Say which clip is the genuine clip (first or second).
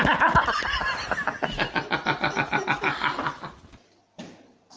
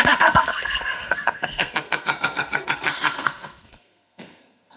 first